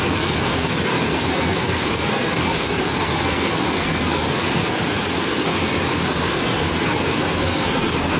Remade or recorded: remade